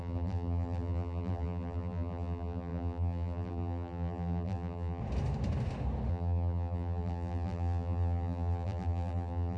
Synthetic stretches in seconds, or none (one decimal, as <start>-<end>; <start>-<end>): 0.0-5.0; 6.1-9.6